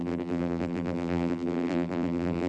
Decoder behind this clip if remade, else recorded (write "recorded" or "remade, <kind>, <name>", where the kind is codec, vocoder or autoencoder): remade, vocoder, BigVGAN v2